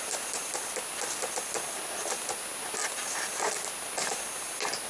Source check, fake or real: real